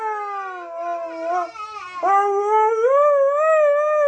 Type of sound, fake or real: real